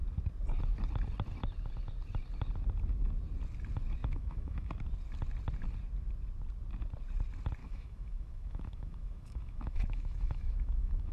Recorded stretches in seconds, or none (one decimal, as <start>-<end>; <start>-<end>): 0.0-4.0; 4.7-7.6